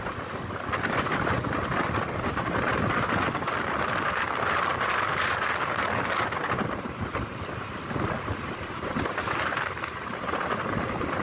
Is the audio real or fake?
real